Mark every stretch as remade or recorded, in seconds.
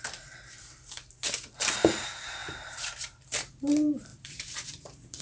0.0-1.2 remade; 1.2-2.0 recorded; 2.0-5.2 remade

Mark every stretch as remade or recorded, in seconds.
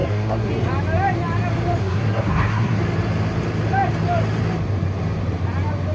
0.0-0.5 remade; 0.5-1.8 recorded; 1.8-2.8 remade; 2.8-5.9 recorded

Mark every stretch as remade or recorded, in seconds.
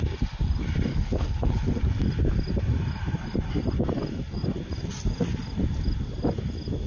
0.0-0.9 recorded; 0.9-1.8 remade; 1.8-6.9 recorded